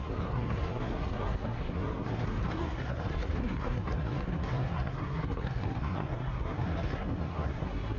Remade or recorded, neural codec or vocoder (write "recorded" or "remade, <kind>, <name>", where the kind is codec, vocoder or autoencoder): remade, codec, SNAC